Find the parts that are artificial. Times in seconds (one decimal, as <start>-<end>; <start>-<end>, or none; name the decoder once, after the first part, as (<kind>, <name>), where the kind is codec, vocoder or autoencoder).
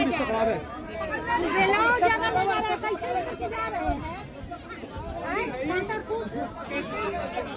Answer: none